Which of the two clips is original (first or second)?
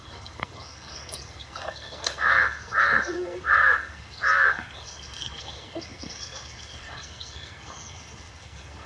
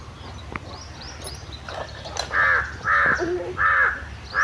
second